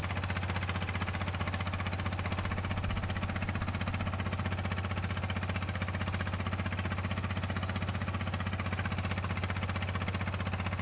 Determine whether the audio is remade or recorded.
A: recorded